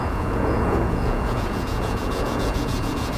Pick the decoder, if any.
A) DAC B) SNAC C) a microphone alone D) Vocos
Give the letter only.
D